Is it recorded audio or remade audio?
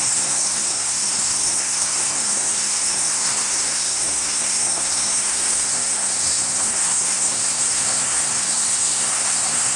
remade